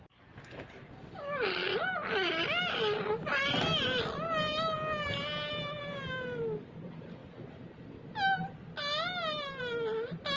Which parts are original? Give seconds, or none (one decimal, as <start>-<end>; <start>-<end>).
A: 0.0-10.4

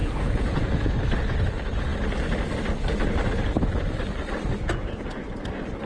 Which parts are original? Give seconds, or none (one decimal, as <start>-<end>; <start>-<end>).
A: 0.9-5.9